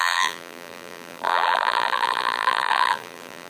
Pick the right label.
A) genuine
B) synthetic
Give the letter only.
B